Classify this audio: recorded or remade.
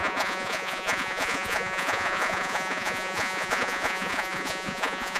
remade